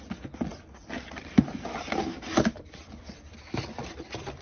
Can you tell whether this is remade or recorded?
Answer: recorded